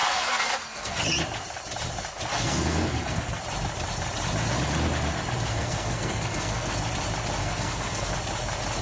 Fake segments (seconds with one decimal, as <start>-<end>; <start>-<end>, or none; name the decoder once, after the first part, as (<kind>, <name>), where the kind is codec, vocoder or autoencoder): 0.0-1.0 (codec, SNAC); 2.3-3.4; 5.5-6.7; 7.4-8.1